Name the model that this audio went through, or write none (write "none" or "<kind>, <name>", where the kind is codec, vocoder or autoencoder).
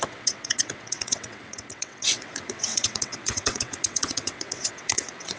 vocoder, WaveNeXt